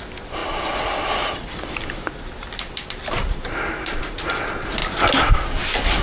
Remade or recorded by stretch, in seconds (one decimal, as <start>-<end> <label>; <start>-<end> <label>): 0.0-6.0 recorded